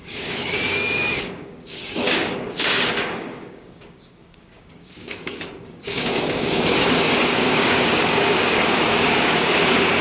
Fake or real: fake